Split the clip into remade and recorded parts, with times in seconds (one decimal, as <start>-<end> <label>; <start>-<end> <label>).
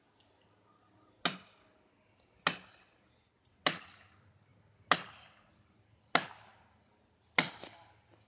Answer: 0.0-8.3 recorded